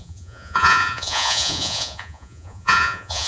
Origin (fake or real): fake